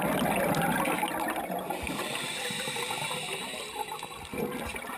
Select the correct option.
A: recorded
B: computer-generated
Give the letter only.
A